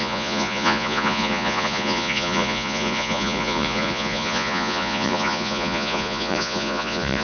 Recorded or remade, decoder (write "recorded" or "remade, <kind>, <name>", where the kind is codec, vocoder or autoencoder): remade, vocoder, Vocos